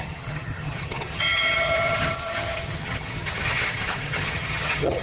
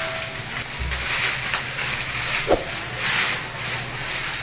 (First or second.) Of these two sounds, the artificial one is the first